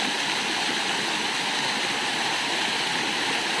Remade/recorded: recorded